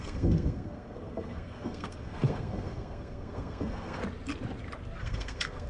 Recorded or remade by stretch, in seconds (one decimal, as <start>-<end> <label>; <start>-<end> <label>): 0.0-4.0 remade; 4.0-5.0 recorded; 5.0-5.7 remade